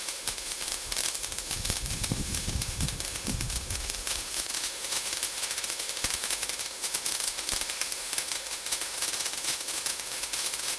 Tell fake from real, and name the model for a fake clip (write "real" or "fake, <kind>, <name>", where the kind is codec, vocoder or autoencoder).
fake, autoencoder, DAC-VAE